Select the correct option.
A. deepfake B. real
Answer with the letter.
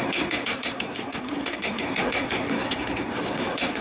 A